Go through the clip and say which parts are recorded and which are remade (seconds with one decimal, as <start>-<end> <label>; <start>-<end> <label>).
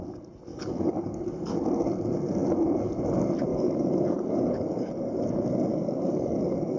0.0-0.5 recorded; 0.5-1.5 remade; 1.5-3.5 recorded; 3.5-4.9 remade; 4.9-5.7 recorded; 5.7-6.8 remade